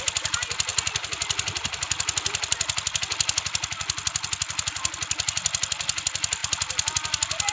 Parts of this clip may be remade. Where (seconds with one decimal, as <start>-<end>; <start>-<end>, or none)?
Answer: none